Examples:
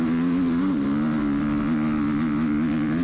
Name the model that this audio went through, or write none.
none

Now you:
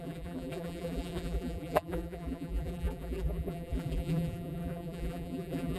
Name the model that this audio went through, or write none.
vocoder, BigVGAN v2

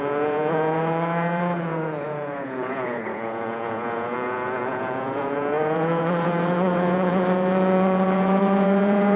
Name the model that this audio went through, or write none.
vocoder, Vocos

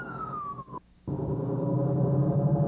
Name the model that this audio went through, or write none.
codec, DAC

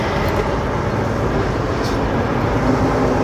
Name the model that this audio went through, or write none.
none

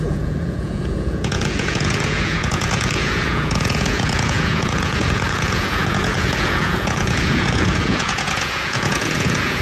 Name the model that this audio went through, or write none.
vocoder, Vocos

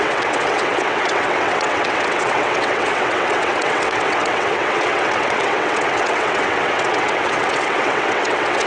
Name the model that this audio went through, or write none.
vocoder, WaveNeXt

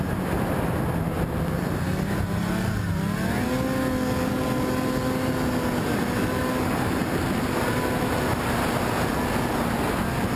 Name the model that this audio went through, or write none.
none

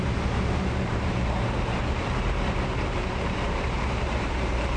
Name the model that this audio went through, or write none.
vocoder, BigVGAN v2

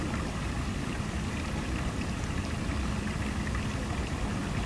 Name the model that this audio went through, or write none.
none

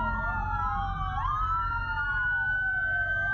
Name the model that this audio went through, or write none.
none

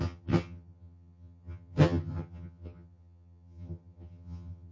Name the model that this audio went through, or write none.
vocoder, HiFi-GAN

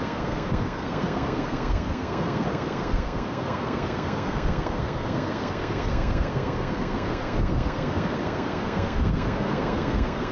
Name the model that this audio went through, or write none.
codec, SNAC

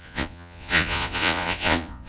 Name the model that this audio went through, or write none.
vocoder, Vocos